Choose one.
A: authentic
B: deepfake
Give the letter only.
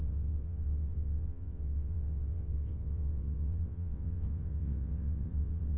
B